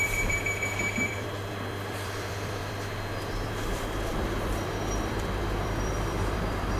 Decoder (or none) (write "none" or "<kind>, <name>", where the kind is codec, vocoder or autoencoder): vocoder, BigVGAN v2